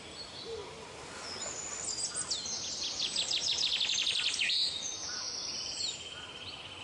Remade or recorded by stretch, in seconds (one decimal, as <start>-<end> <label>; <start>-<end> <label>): 0.0-0.6 remade; 0.6-2.8 recorded; 2.8-6.8 remade